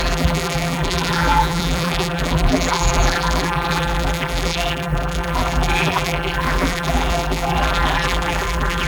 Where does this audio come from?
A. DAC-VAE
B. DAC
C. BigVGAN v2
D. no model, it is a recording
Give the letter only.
C